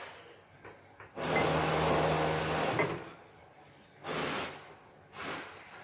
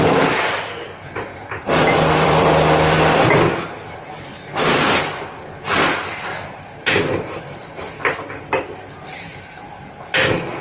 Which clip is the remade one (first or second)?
second